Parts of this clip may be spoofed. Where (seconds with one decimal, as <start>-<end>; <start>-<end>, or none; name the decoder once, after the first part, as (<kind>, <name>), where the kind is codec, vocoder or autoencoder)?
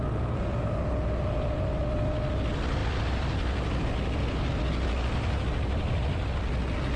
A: 2.8-4.5 (vocoder, BigVGAN v2)